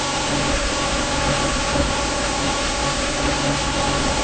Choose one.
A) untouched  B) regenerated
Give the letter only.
B